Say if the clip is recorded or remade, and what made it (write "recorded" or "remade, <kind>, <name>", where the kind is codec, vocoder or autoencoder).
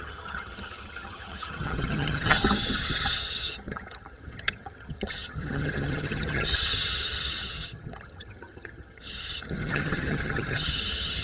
remade, vocoder, HiFi-GAN